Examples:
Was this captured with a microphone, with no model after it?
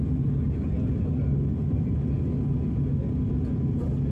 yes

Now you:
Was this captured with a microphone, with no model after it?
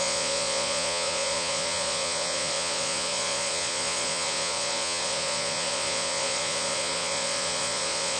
no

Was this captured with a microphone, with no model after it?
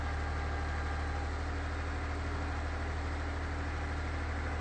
yes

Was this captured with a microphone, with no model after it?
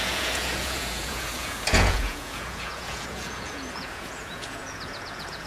no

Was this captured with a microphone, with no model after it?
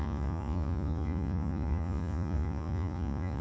no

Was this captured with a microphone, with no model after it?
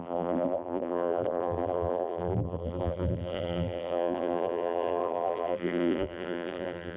no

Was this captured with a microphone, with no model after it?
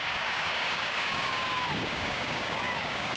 no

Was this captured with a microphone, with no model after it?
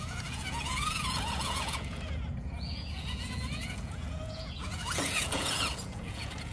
no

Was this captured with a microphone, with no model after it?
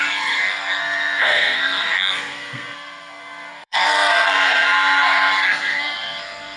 no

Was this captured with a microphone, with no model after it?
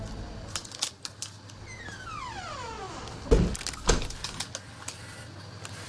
yes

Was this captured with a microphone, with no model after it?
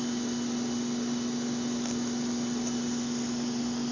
yes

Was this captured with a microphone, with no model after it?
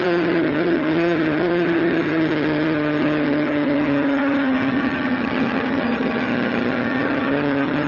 no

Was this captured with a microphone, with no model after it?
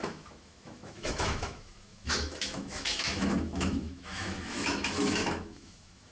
no